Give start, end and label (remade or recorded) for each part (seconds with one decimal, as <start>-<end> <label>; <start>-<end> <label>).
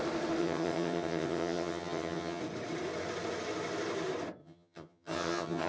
0.0-0.4 recorded; 0.4-2.4 remade; 2.4-4.4 recorded; 4.4-5.7 remade